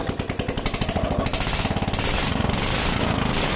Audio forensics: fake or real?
real